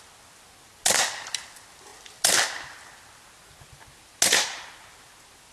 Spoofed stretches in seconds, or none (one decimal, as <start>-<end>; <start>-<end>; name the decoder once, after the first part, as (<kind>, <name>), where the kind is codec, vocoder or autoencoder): none

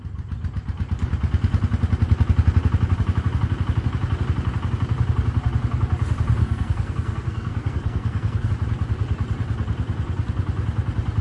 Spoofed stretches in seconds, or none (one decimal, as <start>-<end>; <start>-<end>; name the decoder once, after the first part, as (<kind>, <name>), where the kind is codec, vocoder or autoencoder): 6.4-8.5 (codec, SNAC)

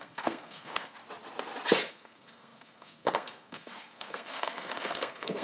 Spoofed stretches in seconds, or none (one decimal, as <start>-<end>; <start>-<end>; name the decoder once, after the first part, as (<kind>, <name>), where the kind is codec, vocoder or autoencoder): 0.0-1.0 (codec, SNAC); 1.9-5.4